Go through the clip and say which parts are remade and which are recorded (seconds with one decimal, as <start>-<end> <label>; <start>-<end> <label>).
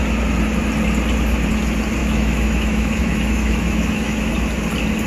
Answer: 0.0-2.0 recorded; 2.0-4.3 remade; 4.3-5.1 recorded